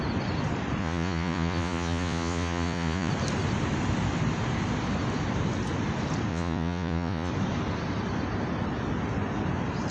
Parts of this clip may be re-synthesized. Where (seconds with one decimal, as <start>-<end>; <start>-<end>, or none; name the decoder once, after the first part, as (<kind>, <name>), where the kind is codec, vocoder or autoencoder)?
0.8-3.1 (vocoder, Vocos); 6.3-7.3